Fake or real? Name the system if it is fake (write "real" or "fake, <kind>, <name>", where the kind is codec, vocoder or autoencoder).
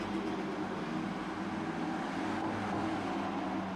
real